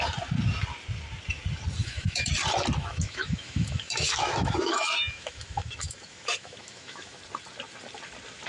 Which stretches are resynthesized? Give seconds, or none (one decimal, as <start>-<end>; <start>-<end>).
1.8-2.3; 2.8-7.2